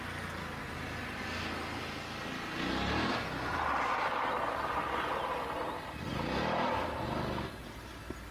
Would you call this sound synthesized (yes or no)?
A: no